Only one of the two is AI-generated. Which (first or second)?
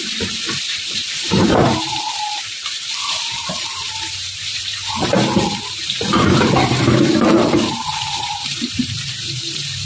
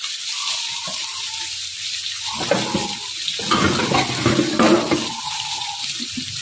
first